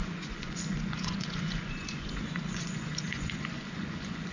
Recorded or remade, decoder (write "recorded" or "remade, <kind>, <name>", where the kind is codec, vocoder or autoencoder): remade, vocoder, Vocos